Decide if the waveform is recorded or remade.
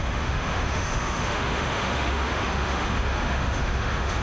remade